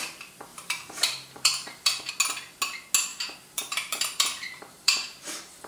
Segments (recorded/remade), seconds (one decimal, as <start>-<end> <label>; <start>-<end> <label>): 0.0-0.5 recorded; 0.5-2.1 remade; 2.1-3.1 recorded; 3.1-5.7 remade